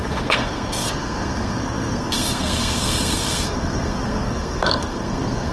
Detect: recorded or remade remade